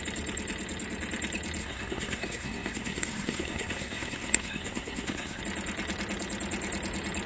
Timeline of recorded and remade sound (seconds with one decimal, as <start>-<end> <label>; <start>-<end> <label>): 0.0-1.6 recorded; 1.6-5.4 remade; 5.4-7.3 recorded